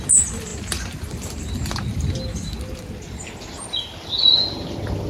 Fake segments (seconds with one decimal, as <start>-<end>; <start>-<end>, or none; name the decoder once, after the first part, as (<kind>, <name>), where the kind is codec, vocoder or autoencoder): none